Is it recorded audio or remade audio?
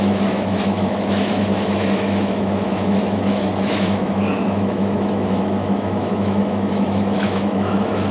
remade